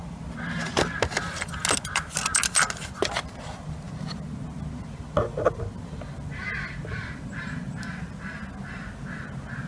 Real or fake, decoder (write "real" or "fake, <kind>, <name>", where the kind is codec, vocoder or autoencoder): real